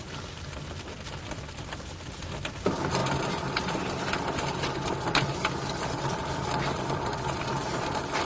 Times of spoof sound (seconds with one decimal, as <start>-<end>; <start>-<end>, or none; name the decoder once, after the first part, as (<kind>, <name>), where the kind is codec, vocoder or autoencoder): none